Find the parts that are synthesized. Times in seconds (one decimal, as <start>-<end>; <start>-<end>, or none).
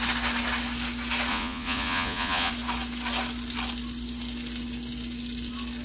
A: 1.3-2.5